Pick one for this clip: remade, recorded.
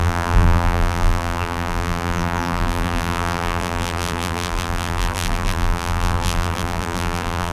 remade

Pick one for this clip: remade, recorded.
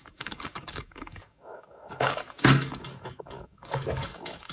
remade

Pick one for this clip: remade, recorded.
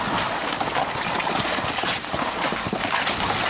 recorded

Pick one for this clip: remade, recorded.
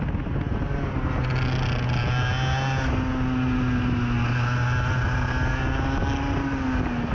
recorded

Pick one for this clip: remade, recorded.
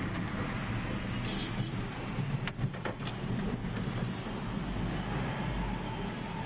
recorded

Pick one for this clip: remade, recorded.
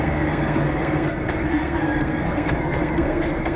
remade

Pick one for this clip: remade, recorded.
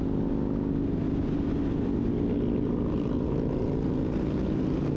recorded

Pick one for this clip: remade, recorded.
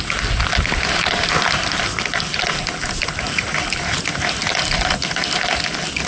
recorded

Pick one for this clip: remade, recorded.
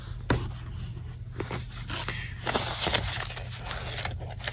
recorded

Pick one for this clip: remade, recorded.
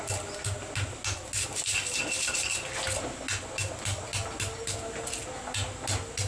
recorded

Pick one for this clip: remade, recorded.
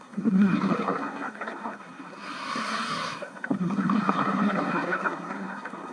remade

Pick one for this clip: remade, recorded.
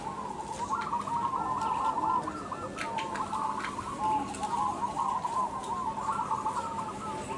recorded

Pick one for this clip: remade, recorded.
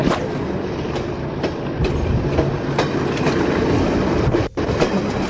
recorded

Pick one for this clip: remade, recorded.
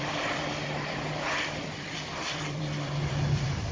remade